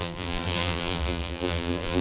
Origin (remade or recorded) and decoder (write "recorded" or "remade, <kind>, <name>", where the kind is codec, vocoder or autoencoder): remade, vocoder, BigVGAN v2